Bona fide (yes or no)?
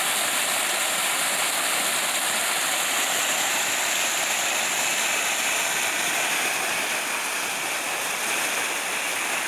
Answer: yes